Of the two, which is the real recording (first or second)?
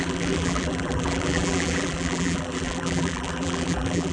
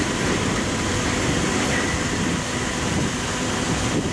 second